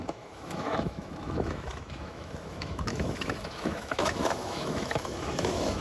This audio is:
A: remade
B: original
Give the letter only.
A